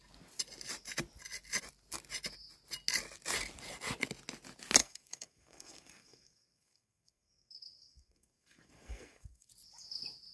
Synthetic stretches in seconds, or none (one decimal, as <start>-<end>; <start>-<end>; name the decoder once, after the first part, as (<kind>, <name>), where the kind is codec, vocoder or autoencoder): 4.8-9.5 (codec, SNAC)